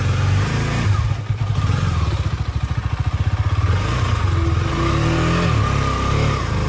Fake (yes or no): no